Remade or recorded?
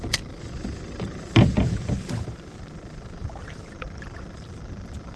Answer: remade